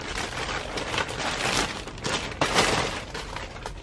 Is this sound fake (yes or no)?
no